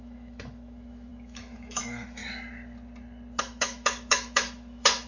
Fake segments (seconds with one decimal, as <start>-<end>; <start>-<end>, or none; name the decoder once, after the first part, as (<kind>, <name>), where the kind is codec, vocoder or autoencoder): 0.0-2.2 (autoencoder, DAC-VAE); 3.4-5.1